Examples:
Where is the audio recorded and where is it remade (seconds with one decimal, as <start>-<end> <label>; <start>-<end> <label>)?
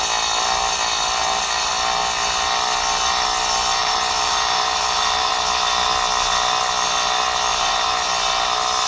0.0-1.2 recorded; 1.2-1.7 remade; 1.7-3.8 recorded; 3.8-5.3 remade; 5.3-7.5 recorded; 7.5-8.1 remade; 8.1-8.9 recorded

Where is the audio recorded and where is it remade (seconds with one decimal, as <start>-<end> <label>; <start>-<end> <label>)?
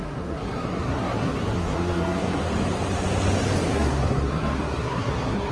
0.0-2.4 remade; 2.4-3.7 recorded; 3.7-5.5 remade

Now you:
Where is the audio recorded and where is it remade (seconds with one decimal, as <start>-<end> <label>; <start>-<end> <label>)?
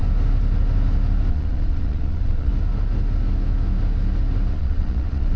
0.0-1.3 recorded; 1.3-2.5 remade; 2.5-4.5 recorded; 4.5-5.4 remade